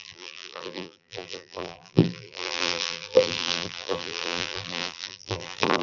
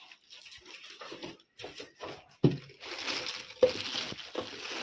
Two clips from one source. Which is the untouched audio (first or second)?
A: second